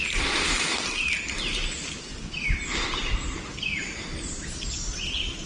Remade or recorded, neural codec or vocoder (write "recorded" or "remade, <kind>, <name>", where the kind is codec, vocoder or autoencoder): recorded